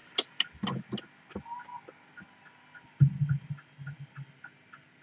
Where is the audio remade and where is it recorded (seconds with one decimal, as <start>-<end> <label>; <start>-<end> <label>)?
0.0-5.0 recorded